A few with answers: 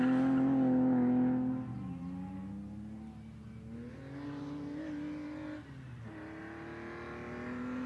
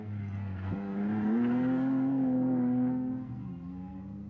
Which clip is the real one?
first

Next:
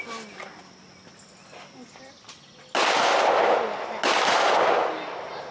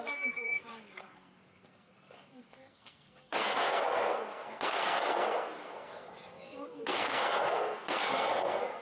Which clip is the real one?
first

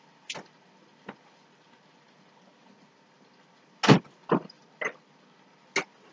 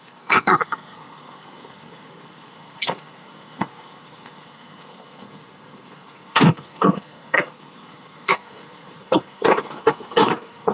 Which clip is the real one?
first